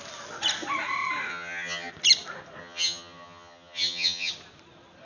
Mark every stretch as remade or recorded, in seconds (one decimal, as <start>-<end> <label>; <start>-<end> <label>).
0.0-1.3 recorded; 1.3-1.9 remade; 1.9-2.6 recorded; 2.6-4.3 remade; 4.3-5.0 recorded